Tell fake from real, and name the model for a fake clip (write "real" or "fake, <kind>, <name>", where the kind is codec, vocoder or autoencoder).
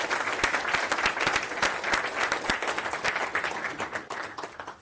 real